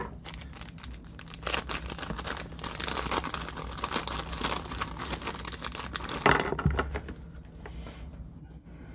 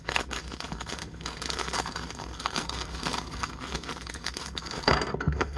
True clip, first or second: first